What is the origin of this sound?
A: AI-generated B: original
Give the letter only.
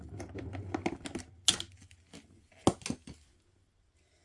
B